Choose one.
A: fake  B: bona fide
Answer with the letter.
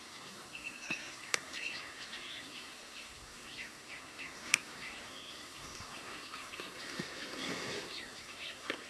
A